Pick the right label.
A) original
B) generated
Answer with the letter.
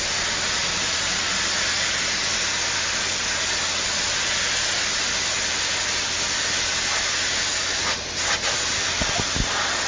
A